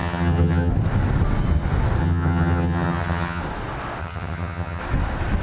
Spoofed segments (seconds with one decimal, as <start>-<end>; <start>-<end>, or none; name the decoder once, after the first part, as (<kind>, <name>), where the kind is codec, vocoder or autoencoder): 0.0-0.7 (vocoder, HiFi-GAN); 2.0-3.4; 4.0-4.8